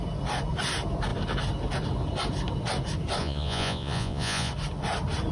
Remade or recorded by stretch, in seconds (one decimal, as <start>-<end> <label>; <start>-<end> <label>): 0.0-3.2 recorded; 3.2-4.5 remade; 4.5-5.3 recorded